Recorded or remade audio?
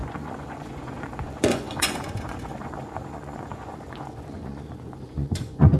remade